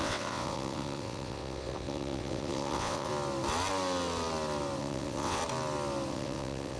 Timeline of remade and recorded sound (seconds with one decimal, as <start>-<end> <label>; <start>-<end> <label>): 0.0-3.1 remade; 3.1-4.8 recorded; 4.8-5.4 remade; 5.4-6.1 recorded; 6.1-6.8 remade